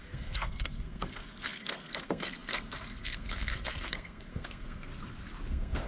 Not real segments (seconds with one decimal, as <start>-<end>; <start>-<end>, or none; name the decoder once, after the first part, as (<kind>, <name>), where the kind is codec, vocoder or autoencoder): 0.0-4.9 (codec, SNAC); 5.5-5.9